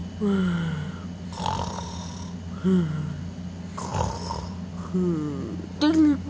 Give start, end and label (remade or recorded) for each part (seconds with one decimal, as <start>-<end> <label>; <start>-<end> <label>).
0.0-6.3 recorded